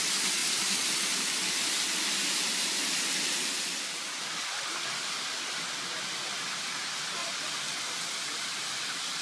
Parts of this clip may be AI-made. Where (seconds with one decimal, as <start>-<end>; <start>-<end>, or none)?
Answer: 2.8-3.8